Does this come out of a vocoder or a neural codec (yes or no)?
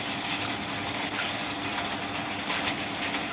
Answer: no